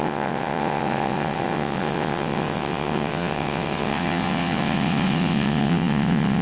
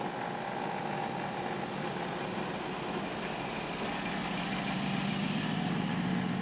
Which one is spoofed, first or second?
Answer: first